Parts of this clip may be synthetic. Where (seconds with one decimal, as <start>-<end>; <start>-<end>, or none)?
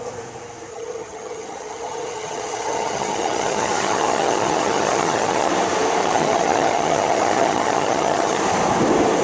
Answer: 0.7-5.5; 6.0-8.4